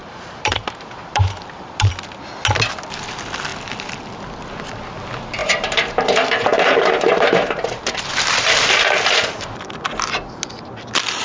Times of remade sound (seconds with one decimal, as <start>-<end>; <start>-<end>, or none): 0.0-1.9; 5.4-9.5